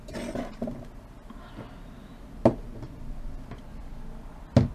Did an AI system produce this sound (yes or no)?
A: no